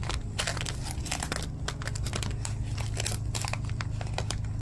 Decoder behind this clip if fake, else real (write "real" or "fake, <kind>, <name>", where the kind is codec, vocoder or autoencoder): real